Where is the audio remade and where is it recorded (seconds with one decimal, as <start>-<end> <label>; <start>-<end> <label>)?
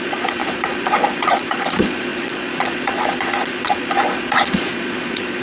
0.0-5.4 remade